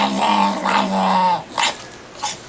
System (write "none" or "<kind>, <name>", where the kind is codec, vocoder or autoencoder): none